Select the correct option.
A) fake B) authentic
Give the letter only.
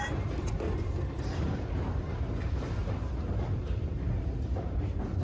A